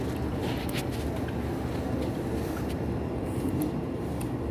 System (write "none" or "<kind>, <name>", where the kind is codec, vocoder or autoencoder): none